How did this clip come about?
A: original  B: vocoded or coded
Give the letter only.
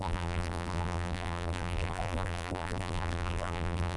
B